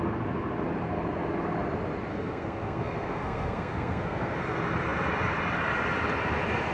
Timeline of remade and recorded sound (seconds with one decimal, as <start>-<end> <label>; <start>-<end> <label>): 0.0-2.1 recorded; 2.1-4.4 remade; 4.4-6.7 recorded